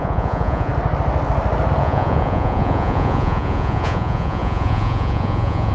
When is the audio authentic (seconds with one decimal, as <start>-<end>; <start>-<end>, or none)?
0.7-1.8